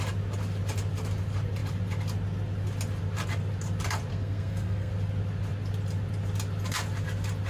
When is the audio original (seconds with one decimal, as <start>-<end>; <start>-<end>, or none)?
0.0-4.1; 4.9-7.5